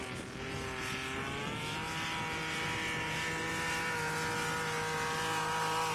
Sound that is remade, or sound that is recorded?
recorded